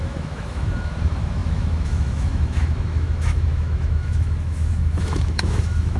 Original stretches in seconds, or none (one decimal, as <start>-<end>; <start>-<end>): none